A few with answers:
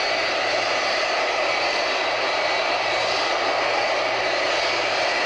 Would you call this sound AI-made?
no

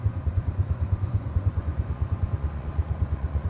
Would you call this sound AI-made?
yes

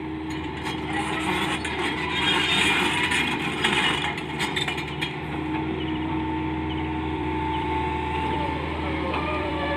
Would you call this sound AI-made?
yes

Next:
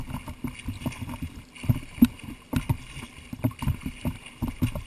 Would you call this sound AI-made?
no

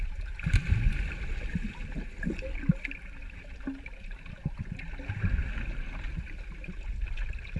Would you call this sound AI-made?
no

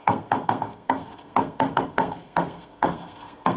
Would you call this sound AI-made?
yes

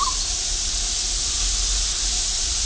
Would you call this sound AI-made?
no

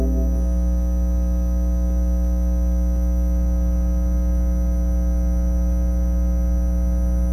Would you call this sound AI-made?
no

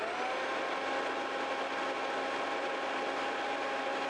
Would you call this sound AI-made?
no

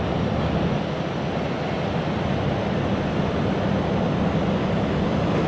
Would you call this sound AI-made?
no